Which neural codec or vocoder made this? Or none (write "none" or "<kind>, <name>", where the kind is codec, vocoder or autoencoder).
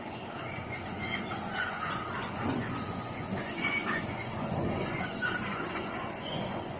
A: vocoder, Vocos